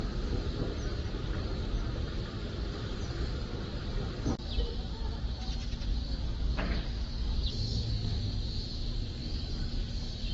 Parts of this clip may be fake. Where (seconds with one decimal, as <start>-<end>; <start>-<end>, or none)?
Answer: 5.9-8.4; 9.2-10.3